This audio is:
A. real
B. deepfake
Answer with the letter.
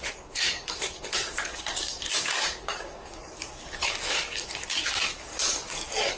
B